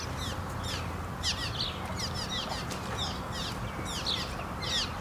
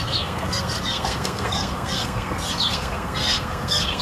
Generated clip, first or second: second